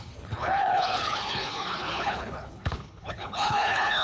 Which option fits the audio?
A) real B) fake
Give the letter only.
B